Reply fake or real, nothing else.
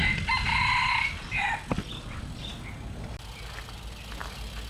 real